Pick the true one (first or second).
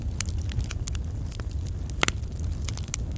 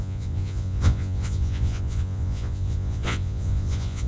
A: first